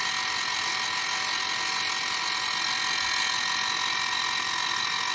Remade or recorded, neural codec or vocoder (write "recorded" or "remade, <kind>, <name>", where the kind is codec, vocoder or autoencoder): recorded